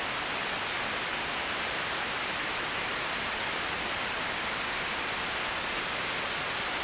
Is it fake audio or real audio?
real